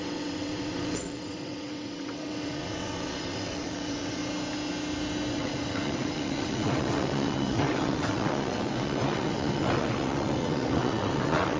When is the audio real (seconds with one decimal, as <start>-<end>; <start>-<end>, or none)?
4.2-5.3